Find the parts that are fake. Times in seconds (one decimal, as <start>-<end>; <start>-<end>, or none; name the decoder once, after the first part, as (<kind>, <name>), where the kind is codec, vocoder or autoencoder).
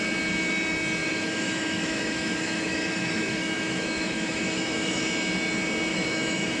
1.0-5.0 (autoencoder, DAC-VAE); 5.9-6.6